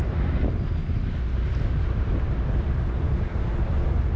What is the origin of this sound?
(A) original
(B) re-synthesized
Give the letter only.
A